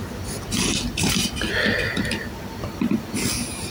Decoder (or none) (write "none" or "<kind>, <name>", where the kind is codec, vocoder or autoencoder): none